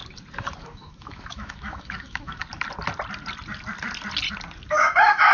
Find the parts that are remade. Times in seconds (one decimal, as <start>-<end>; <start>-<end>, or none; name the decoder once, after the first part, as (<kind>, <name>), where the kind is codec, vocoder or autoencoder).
0.6-2.4 (autoencoder, DAC-VAE); 4.7-5.3